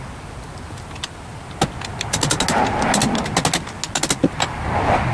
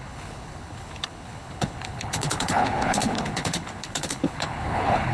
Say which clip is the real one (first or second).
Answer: first